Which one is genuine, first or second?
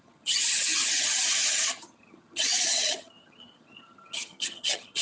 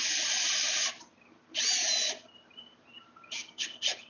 second